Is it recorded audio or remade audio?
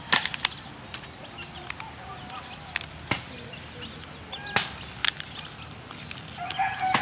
recorded